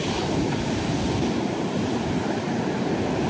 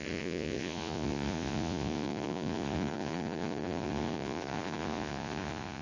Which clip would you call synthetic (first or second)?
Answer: second